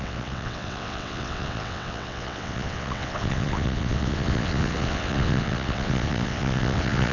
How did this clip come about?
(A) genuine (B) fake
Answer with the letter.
B